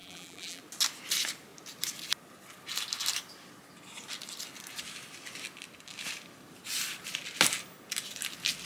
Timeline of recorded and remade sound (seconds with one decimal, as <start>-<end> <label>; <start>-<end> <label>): 0.0-0.6 remade; 0.6-8.7 recorded